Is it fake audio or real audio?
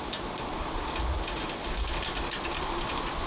real